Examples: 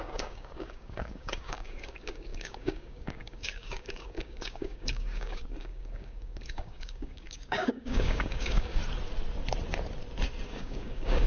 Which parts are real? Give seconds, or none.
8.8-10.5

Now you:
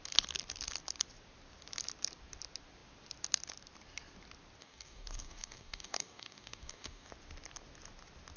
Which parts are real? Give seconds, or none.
0.0-4.6; 7.1-8.4